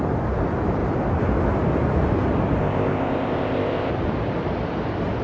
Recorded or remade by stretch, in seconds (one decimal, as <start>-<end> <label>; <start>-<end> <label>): 0.0-2.6 recorded; 2.6-3.9 remade; 3.9-5.2 recorded